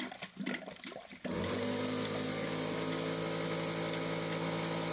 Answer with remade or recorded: recorded